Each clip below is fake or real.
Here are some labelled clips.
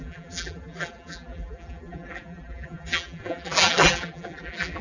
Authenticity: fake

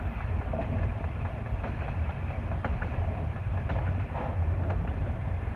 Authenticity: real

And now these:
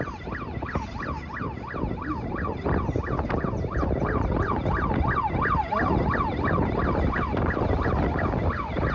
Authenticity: fake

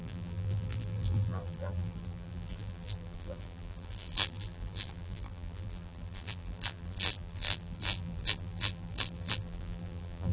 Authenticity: fake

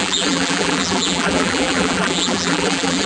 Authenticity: fake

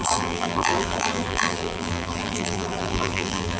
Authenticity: fake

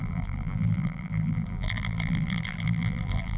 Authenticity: fake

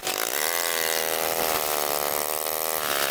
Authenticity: real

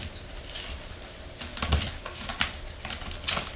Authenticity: real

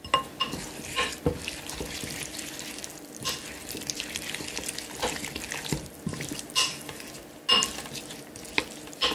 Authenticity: real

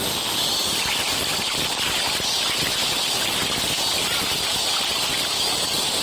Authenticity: real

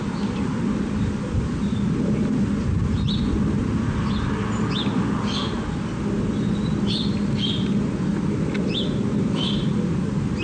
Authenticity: fake